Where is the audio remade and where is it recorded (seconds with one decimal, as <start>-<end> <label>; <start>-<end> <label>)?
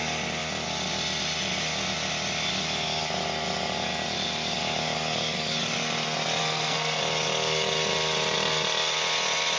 0.0-6.4 recorded; 6.4-7.0 remade; 7.0-9.6 recorded